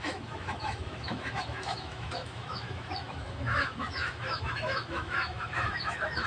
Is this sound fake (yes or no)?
yes